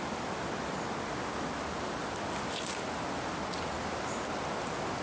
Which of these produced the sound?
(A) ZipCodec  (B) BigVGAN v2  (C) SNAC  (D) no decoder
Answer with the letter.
D